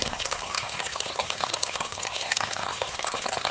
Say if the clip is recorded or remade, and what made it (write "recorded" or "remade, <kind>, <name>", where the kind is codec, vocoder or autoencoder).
remade, codec, SNAC